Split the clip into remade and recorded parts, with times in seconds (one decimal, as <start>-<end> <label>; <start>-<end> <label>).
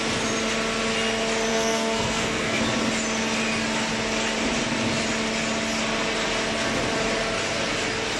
0.0-1.5 recorded; 1.5-2.6 remade; 2.6-8.2 recorded